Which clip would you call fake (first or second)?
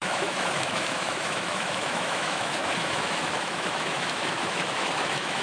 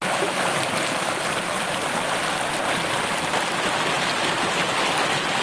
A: first